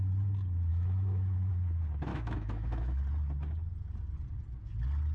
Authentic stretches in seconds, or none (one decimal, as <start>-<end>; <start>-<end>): 0.0-0.7; 1.5-2.1; 3.0-5.1